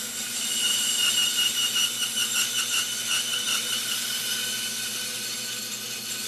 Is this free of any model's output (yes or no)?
yes